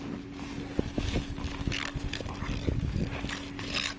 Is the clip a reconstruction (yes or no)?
no